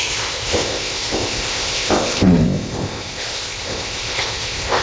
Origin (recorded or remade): remade